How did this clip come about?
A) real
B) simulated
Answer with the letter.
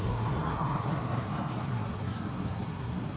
B